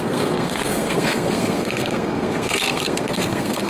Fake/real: fake